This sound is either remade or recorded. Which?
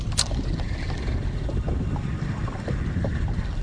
recorded